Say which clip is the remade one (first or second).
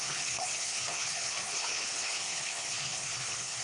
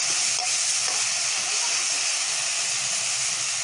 first